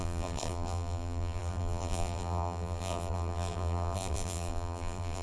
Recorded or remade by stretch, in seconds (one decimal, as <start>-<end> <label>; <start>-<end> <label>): 0.0-5.2 remade